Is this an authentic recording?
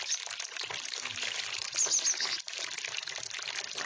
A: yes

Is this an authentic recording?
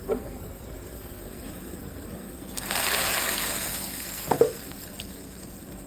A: no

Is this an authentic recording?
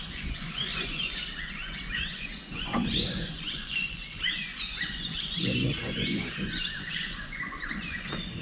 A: no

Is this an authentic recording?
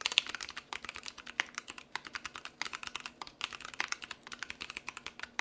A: yes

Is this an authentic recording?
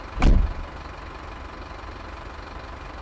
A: yes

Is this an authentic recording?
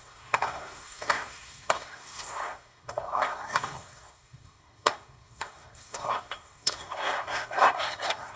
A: no